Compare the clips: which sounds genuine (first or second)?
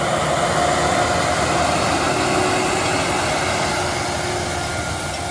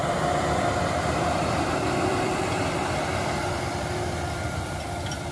first